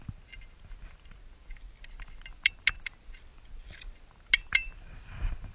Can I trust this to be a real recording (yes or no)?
yes